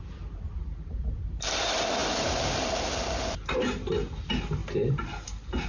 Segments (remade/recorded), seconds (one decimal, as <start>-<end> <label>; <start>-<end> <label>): 0.0-4.6 recorded; 4.6-5.3 remade; 5.3-5.7 recorded